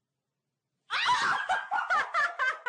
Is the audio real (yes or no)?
yes